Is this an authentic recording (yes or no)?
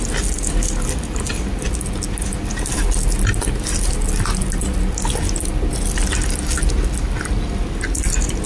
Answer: yes